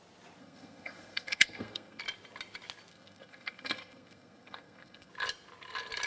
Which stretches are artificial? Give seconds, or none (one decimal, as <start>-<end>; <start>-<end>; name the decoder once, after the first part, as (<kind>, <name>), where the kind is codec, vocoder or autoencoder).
0.4-2.0 (codec, SNAC); 2.9-5.1